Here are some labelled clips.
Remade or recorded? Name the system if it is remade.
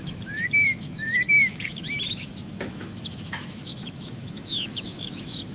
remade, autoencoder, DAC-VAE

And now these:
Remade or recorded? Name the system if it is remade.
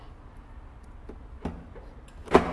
recorded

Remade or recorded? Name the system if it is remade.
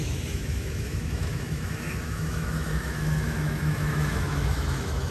remade, autoencoder, DAC-VAE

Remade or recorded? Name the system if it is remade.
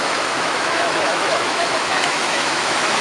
remade, autoencoder, DAC-VAE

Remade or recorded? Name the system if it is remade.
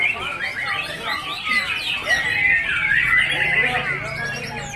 recorded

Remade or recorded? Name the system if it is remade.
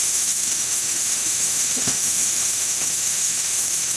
remade, autoencoder, DAC-VAE